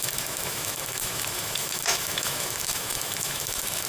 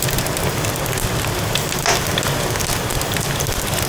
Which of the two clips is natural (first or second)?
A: second